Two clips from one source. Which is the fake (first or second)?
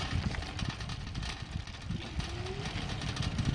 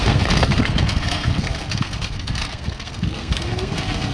second